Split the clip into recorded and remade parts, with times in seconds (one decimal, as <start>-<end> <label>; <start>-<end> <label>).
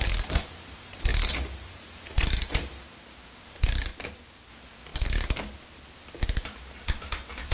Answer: 0.0-1.1 remade; 1.1-2.8 recorded; 2.8-3.9 remade; 3.9-4.5 recorded; 4.5-4.9 remade; 4.9-6.2 recorded; 6.2-7.5 remade